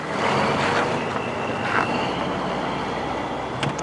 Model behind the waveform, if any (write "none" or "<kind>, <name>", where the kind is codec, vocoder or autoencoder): none